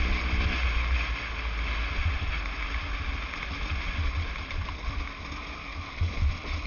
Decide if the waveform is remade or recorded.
recorded